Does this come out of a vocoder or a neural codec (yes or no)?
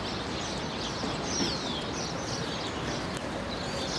no